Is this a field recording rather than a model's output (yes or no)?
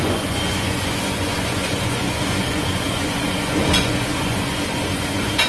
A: no